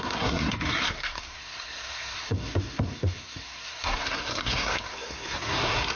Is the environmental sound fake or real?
fake